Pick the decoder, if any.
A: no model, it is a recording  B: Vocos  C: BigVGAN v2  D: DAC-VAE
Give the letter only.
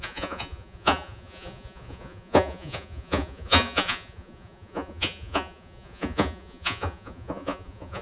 B